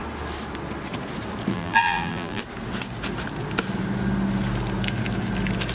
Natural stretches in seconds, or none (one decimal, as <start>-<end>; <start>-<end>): 0.0-1.5; 2.4-5.7